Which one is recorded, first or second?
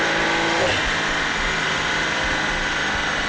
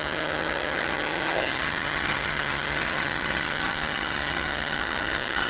first